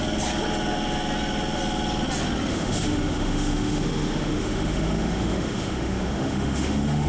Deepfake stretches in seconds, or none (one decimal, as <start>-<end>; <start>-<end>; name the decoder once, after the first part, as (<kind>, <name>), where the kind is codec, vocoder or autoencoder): 2.5-7.1 (autoencoder, DAC-VAE)